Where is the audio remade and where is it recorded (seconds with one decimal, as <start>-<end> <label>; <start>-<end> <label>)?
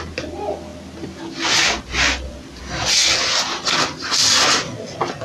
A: 0.0-5.2 recorded